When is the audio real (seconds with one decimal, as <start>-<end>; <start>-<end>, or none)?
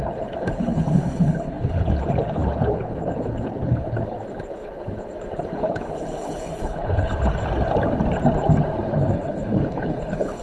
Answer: 7.1-8.9